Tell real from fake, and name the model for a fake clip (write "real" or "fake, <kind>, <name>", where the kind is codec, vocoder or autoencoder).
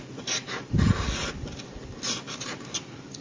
real